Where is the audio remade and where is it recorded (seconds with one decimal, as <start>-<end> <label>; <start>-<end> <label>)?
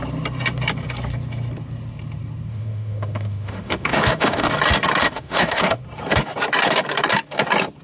0.0-2.5 recorded; 2.5-4.5 remade; 4.5-5.0 recorded; 5.0-5.8 remade; 5.8-7.8 recorded